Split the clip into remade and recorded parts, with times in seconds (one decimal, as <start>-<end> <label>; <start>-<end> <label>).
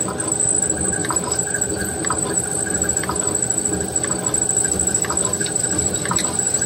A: 0.0-1.0 recorded; 1.0-2.4 remade; 2.4-5.3 recorded; 5.3-6.7 remade